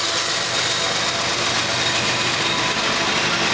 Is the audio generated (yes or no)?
no